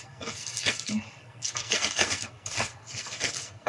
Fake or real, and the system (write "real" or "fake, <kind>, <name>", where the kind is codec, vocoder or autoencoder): fake, codec, SNAC